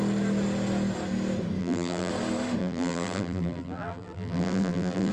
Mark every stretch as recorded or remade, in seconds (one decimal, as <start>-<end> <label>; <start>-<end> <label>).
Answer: 0.0-1.6 recorded; 1.6-2.1 remade; 2.1-2.6 recorded; 2.6-5.1 remade